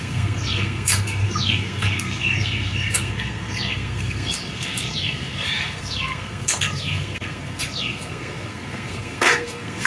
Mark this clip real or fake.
fake